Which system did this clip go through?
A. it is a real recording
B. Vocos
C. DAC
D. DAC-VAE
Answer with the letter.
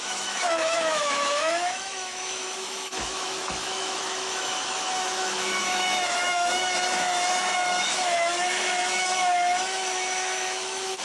D